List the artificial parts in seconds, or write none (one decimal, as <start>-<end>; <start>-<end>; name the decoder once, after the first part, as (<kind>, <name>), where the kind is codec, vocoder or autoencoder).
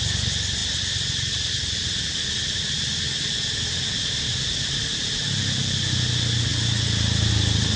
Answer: none